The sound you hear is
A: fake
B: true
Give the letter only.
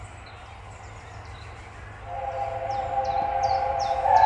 B